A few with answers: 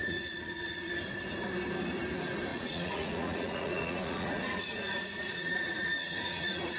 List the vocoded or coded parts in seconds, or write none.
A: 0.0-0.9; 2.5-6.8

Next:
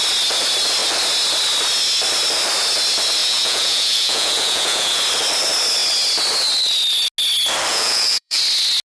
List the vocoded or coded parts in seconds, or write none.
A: 3.2-5.0; 7.7-8.4

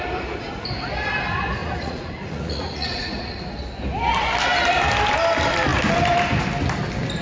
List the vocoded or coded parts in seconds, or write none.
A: 1.6-3.4

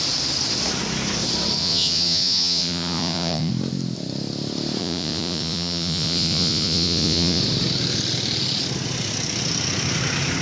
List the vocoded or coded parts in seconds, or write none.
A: 1.6-3.5; 4.8-7.4

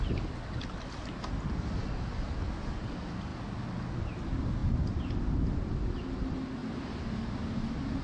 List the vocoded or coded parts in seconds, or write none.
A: none

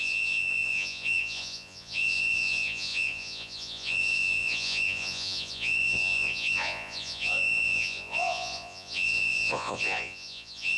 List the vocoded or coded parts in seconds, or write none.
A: 0.0-10.8